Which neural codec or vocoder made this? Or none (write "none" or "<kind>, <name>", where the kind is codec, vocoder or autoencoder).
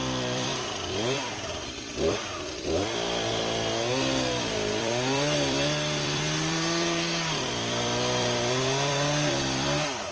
vocoder, BigVGAN v2